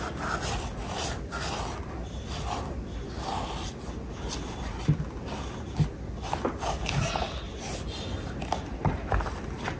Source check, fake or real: real